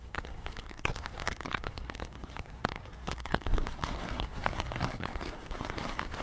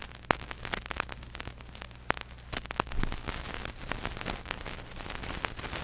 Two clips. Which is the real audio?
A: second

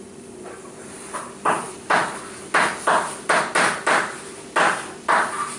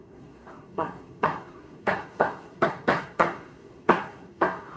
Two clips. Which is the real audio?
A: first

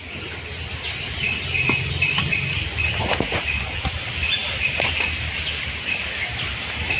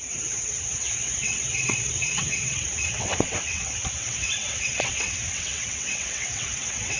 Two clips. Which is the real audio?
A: first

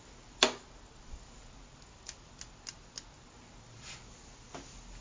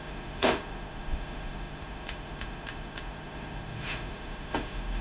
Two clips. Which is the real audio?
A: first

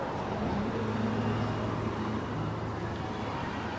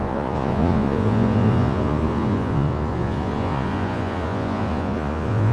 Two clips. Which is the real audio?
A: first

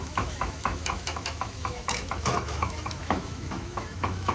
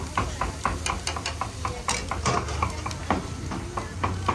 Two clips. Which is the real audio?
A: second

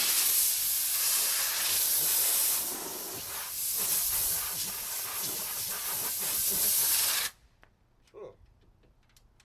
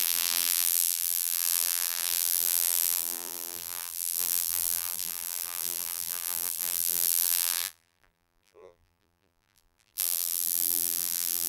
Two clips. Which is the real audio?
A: first